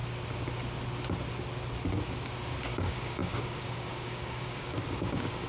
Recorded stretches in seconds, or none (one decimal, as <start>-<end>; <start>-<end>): 0.0-2.6

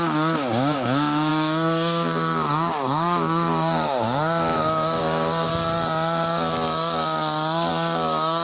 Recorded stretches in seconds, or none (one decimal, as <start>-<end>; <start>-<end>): 5.5-7.7

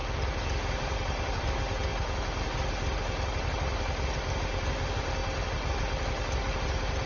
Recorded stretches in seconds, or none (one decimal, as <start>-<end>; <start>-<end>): 0.0-7.1